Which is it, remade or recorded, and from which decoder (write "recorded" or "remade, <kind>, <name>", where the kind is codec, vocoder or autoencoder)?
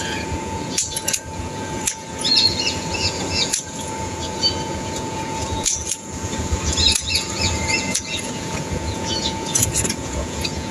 remade, vocoder, Vocos